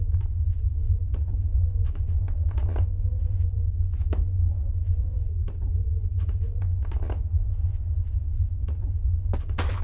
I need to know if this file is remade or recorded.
recorded